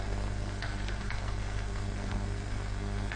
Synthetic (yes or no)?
yes